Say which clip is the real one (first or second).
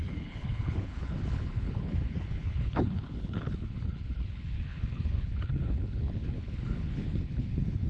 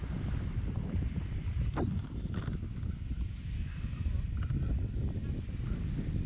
second